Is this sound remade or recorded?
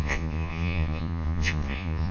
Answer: remade